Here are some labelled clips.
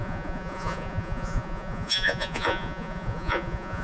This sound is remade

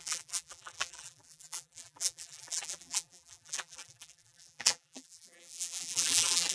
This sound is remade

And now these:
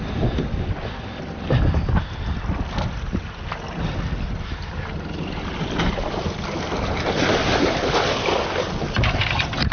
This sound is recorded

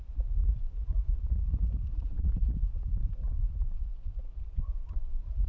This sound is remade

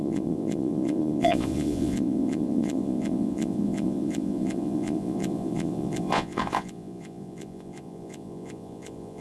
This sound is remade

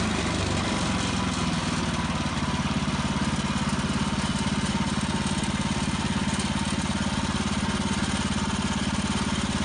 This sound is recorded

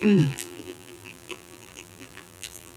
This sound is remade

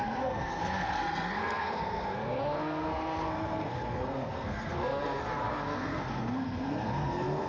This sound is remade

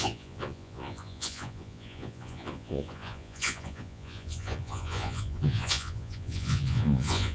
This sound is remade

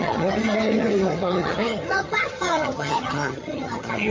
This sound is remade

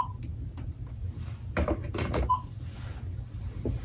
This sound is recorded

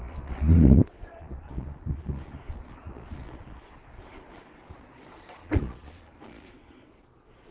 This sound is remade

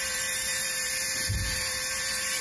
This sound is remade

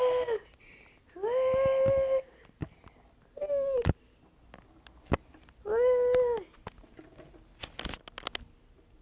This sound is recorded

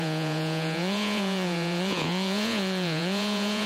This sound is remade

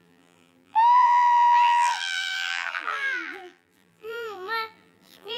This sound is remade